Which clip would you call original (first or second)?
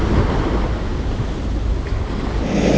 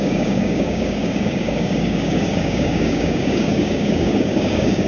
first